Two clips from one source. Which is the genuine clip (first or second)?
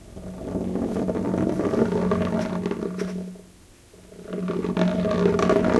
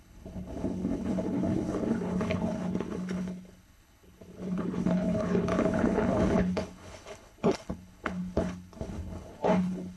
first